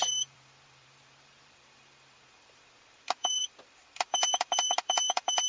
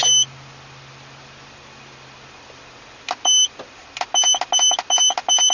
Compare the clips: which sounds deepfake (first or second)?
first